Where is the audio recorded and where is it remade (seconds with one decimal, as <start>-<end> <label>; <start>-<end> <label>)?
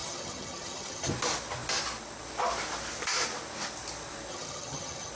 0.0-1.1 remade; 1.1-4.3 recorded; 4.3-5.1 remade